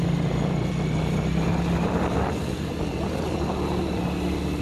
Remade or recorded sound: recorded